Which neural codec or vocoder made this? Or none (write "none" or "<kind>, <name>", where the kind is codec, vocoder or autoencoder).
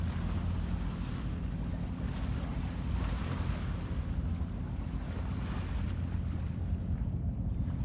none